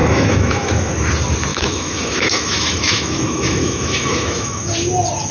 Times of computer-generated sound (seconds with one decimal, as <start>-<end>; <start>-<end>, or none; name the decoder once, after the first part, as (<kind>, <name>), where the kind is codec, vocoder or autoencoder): 0.0-0.9 (autoencoder, DAC-VAE); 1.5-4.7